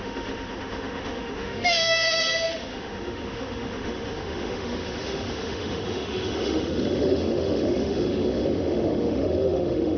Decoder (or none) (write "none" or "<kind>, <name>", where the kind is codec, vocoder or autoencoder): autoencoder, DAC-VAE